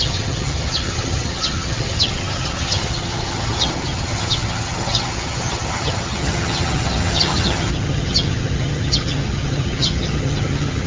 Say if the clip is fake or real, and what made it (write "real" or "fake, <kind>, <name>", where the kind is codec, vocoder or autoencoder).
fake, vocoder, HiFi-GAN